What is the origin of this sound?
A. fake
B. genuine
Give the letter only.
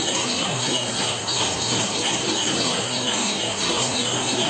A